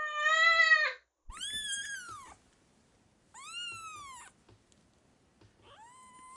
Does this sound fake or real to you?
real